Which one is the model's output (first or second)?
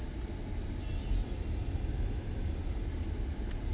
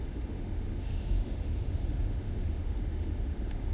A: second